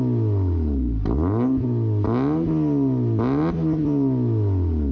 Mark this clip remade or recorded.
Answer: recorded